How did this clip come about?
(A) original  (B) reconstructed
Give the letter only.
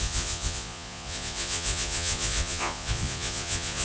B